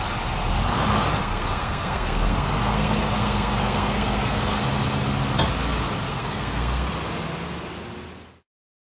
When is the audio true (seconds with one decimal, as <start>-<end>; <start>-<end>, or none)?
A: 0.0-1.2; 4.6-6.1; 6.9-8.9